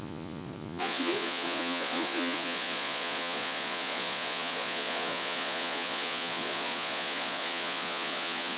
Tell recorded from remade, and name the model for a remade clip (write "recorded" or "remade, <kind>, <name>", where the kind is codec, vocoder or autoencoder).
remade, vocoder, Vocos